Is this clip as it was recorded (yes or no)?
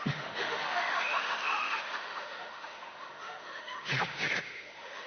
no